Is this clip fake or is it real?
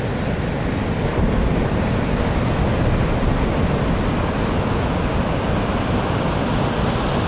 real